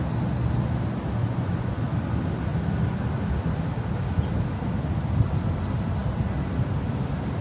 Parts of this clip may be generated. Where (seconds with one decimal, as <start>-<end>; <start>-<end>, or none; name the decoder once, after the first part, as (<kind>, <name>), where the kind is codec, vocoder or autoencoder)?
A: 1.2-1.8 (vocoder, Vocos)